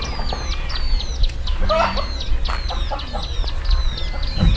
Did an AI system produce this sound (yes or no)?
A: no